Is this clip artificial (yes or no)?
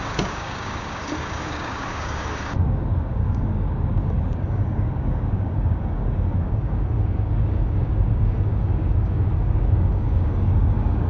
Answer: yes